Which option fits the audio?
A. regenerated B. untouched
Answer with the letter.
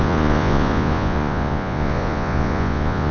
A